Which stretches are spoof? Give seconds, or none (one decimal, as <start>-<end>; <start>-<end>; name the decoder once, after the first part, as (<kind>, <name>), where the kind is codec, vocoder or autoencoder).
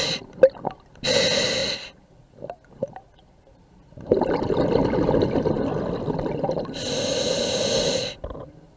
none